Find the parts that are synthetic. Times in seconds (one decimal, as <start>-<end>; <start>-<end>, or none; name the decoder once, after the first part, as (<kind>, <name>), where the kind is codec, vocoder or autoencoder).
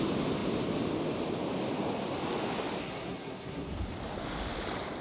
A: 2.8-3.7 (codec, SNAC)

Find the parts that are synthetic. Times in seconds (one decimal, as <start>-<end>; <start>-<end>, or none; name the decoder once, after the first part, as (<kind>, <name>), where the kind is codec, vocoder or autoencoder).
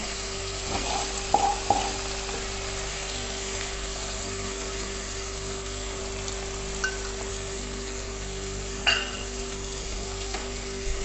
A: 0.0-0.9 (codec, SNAC); 2.9-6.0; 7.3-11.0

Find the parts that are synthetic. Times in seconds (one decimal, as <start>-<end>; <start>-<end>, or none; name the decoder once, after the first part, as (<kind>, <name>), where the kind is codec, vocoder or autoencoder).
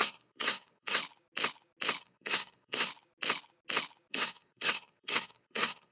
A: 0.0-1.0 (codec, SNAC); 2.0-2.9; 4.1-5.9